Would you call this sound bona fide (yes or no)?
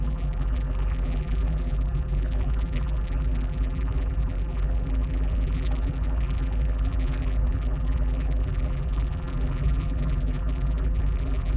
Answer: no